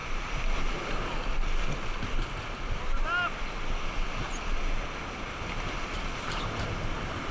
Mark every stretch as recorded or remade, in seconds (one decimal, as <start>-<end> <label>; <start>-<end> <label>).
0.0-1.0 remade; 1.0-7.3 recorded